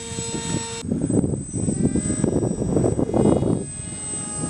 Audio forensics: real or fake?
real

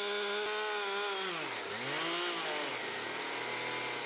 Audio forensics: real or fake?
real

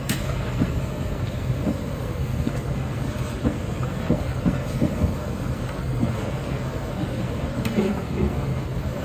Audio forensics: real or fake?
fake